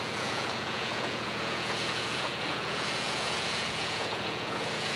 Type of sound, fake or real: fake